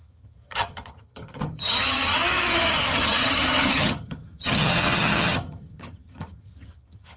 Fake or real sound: fake